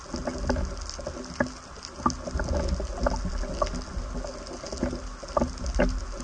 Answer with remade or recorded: recorded